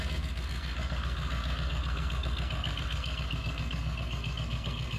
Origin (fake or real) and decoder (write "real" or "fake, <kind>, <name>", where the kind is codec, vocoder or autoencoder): fake, codec, SNAC